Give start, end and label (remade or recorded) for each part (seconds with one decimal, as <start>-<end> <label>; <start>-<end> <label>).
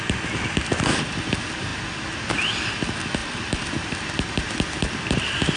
0.0-3.2 recorded; 3.2-4.3 remade; 4.3-5.6 recorded